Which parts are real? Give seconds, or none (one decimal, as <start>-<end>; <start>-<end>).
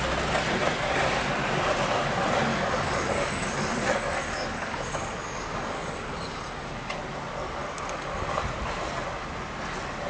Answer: 0.0-2.5; 7.0-7.6; 8.3-10.1